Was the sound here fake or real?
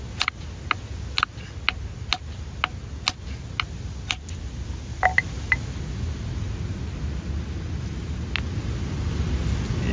real